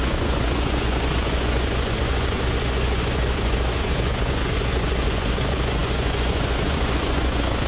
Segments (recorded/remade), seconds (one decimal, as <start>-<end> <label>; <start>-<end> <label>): 0.0-7.7 remade